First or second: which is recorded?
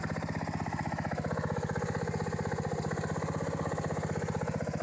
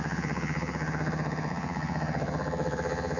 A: first